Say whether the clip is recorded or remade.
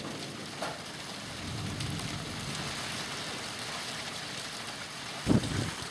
recorded